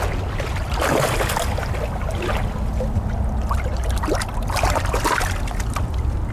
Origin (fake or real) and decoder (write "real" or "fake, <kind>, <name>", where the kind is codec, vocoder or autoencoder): real